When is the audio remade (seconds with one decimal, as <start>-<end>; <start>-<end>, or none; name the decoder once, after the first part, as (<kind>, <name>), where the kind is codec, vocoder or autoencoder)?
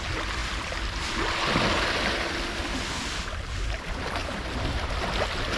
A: 4.2-4.9 (vocoder, BigVGAN v2)